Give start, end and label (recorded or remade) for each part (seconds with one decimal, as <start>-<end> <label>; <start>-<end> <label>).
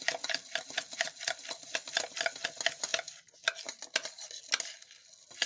0.0-5.5 recorded